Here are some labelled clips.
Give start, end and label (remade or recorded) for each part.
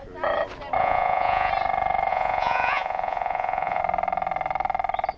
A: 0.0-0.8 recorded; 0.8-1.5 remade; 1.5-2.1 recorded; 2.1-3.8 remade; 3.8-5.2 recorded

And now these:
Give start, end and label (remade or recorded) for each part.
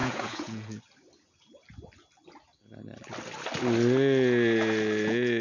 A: 0.0-0.8 remade; 0.8-5.4 recorded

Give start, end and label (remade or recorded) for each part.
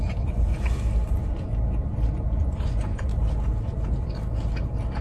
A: 0.0-0.5 remade; 0.5-1.1 recorded; 1.1-1.5 remade; 1.5-2.4 recorded; 2.4-3.1 remade; 3.1-5.0 recorded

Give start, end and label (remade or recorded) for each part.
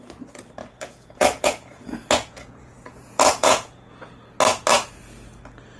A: 0.0-0.6 recorded; 0.6-4.1 remade; 4.1-5.8 recorded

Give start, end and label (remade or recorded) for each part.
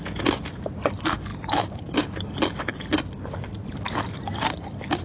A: 0.0-5.0 recorded